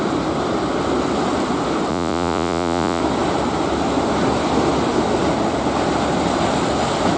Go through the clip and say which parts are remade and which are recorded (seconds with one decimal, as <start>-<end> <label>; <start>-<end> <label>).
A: 0.0-1.9 recorded; 1.9-3.0 remade; 3.0-7.2 recorded